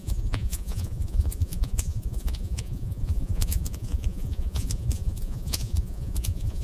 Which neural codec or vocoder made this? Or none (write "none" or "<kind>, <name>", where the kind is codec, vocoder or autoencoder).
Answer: vocoder, Vocos